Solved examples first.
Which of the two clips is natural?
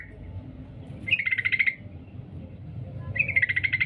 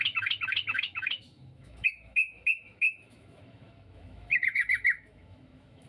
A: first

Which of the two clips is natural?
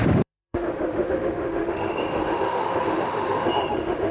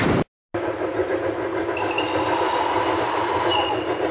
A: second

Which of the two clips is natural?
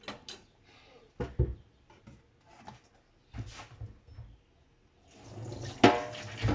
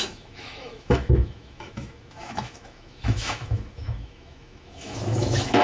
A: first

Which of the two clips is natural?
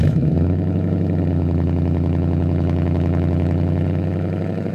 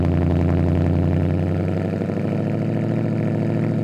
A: second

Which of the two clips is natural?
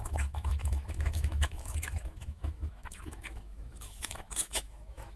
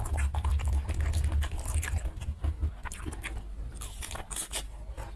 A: second